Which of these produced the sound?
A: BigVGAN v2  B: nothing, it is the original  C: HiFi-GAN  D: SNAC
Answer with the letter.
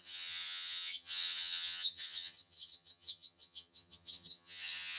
C